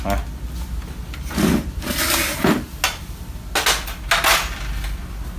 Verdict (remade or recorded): recorded